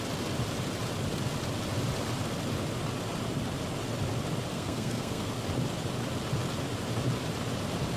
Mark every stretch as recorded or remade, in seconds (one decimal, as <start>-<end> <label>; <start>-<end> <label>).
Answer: 0.0-4.5 recorded; 4.5-5.3 remade; 5.3-8.0 recorded